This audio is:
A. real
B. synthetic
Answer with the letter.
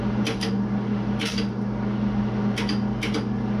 A